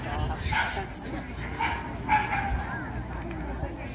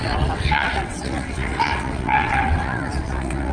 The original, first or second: first